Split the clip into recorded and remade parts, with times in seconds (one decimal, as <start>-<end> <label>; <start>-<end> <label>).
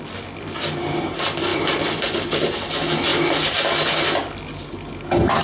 0.0-1.5 recorded; 1.5-2.4 remade; 2.4-5.4 recorded